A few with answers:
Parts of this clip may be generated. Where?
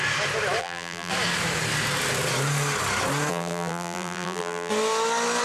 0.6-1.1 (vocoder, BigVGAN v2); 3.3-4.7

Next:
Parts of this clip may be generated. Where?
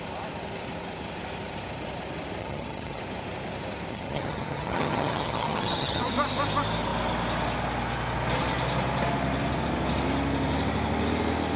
2.4-3.0 (vocoder, HiFi-GAN); 3.9-6.1